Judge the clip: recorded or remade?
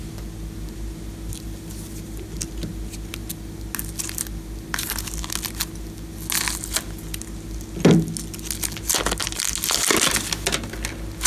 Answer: recorded